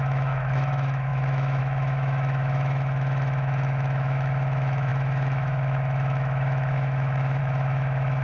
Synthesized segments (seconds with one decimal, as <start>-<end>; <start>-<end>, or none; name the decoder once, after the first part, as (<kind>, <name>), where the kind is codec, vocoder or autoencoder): 0.0-8.2 (autoencoder, DAC-VAE)